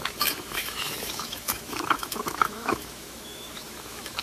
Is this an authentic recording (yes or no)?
no